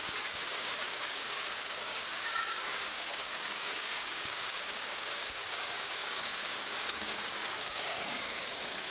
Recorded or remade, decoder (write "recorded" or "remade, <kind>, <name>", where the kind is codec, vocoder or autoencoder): remade, codec, DAC